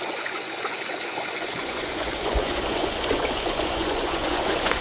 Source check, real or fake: fake